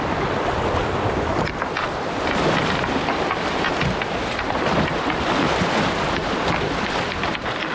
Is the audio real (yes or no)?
no